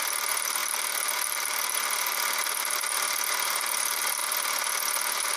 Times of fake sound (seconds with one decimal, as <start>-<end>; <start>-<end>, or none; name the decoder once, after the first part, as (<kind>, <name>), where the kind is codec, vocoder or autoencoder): none